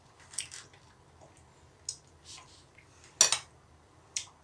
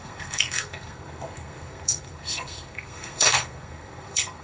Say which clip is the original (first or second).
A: first